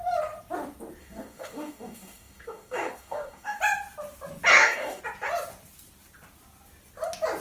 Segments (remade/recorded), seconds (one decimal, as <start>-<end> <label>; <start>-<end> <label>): 0.0-1.0 recorded; 1.0-3.6 remade; 3.6-4.5 recorded; 4.5-5.0 remade; 5.0-7.4 recorded